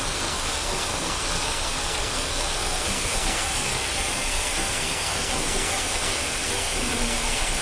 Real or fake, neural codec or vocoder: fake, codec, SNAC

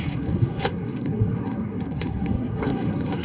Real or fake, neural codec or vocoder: fake, codec, SNAC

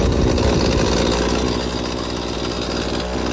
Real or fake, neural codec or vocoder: real